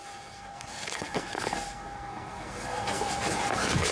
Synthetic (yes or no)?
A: yes